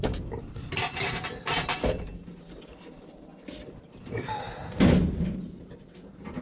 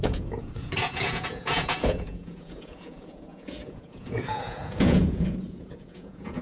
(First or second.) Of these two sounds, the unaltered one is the first